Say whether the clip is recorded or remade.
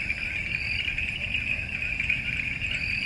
recorded